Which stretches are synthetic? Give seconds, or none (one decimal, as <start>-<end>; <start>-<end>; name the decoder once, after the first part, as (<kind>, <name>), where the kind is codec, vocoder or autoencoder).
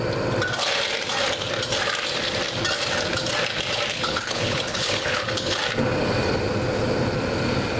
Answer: 3.9-5.6 (codec, HILCodec)